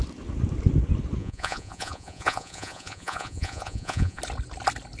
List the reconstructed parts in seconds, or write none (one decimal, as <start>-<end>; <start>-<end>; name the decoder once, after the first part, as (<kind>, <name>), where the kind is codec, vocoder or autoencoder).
1.2-4.2 (vocoder, Vocos)